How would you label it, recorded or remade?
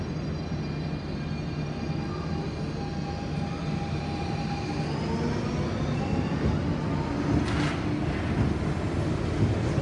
recorded